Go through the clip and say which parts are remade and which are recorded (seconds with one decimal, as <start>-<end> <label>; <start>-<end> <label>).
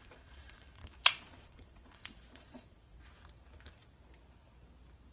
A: 0.0-3.1 remade; 3.1-5.1 recorded